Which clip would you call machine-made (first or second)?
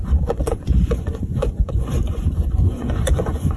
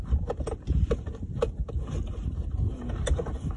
first